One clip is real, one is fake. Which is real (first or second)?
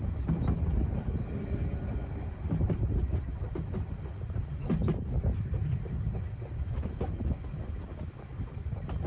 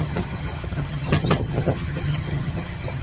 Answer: first